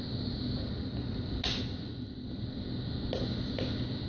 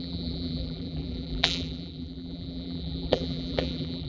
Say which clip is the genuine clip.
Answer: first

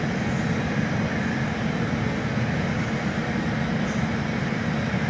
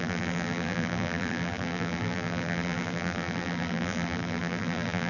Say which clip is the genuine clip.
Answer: first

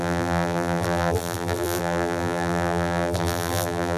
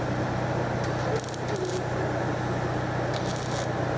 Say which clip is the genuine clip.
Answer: second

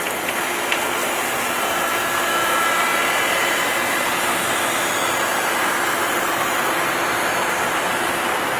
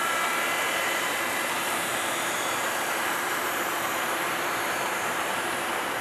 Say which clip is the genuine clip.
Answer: first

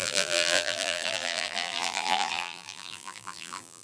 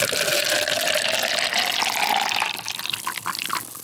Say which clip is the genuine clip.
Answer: second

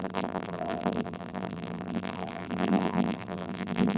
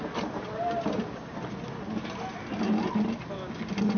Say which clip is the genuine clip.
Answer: second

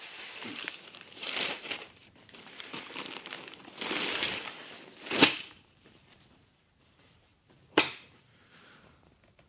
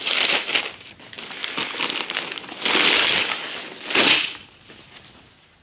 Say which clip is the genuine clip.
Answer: second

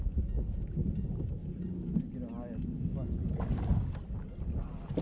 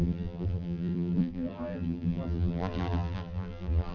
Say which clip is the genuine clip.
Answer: first